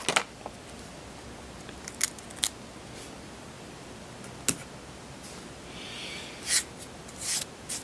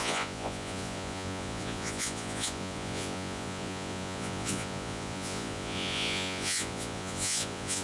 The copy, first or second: second